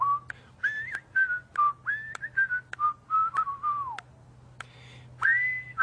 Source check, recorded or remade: recorded